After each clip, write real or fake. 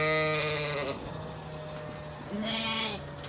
real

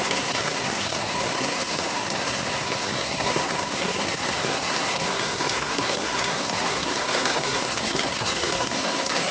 fake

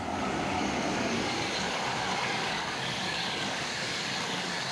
fake